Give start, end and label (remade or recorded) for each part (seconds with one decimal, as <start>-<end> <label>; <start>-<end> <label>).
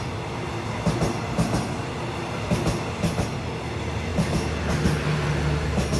0.0-6.0 recorded